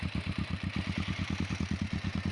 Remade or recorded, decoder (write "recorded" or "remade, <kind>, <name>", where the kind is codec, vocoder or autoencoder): recorded